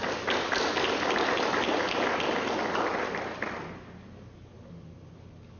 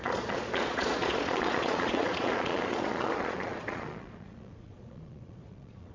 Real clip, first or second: first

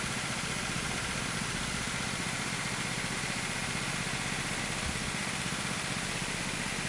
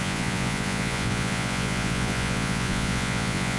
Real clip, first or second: first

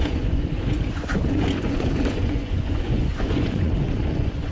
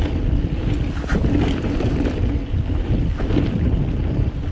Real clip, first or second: second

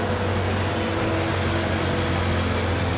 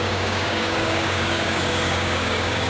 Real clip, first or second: first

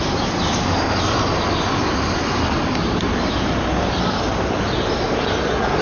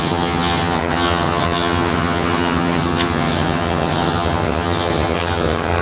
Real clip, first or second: first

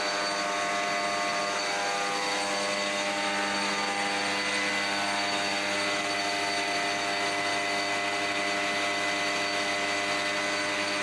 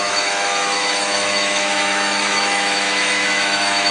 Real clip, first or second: first